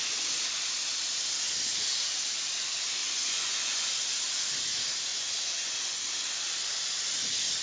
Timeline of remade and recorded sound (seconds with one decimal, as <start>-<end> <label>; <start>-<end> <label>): 0.0-3.0 recorded; 3.0-3.9 remade; 3.9-5.1 recorded; 5.1-6.0 remade; 6.0-7.6 recorded